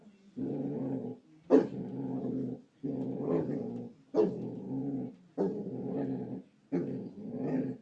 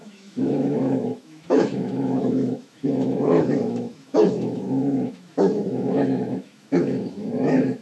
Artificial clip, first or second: second